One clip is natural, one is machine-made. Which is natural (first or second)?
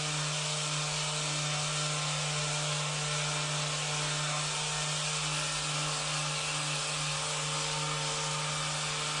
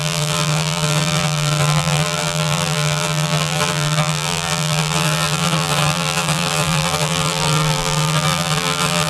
first